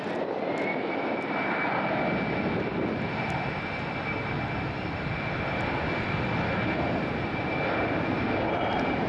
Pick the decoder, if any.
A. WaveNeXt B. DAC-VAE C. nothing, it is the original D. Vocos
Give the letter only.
C